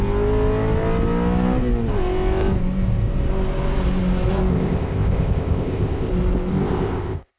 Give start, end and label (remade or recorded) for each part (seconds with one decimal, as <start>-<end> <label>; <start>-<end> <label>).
0.0-4.5 recorded; 4.5-6.1 remade; 6.1-6.5 recorded; 6.5-7.4 remade